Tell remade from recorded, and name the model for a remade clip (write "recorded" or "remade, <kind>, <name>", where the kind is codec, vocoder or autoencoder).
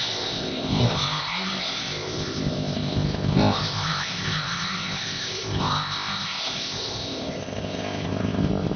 remade, codec, ZipCodec